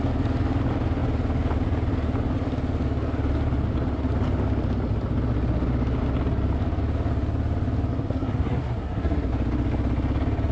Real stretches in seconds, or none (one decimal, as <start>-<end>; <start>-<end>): 0.0-7.9; 9.3-10.5